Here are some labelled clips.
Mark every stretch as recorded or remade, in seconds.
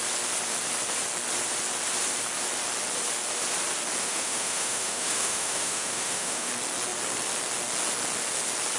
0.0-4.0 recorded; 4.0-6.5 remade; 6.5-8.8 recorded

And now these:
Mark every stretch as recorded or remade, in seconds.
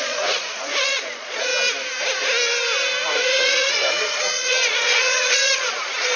0.0-1.5 remade; 1.5-3.4 recorded; 3.4-6.2 remade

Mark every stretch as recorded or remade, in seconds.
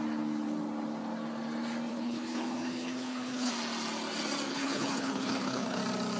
0.0-1.9 recorded; 1.9-3.5 remade; 3.5-4.5 recorded; 4.5-5.8 remade; 5.8-6.2 recorded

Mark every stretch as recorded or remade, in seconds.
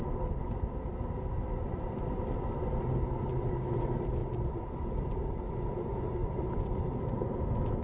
0.0-4.2 recorded; 4.2-5.3 remade; 5.3-6.2 recorded; 6.2-6.9 remade; 6.9-7.8 recorded